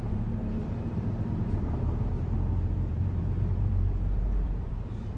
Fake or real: fake